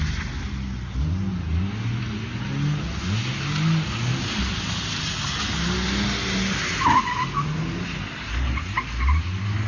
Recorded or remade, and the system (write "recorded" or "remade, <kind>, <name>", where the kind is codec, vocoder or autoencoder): recorded